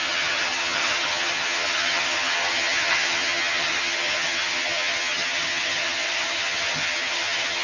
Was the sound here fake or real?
fake